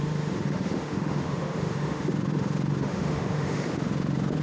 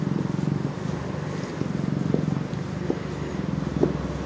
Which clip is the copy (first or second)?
first